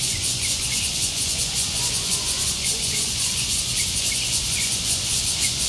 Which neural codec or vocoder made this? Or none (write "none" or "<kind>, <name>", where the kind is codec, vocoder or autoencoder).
vocoder, Vocos